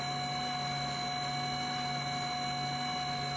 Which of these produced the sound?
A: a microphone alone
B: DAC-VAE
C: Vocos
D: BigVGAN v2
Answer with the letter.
A